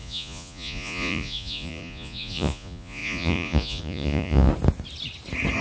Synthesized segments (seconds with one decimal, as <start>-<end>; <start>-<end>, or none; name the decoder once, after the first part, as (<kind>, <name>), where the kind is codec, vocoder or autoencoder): 0.0-4.5 (vocoder, Vocos)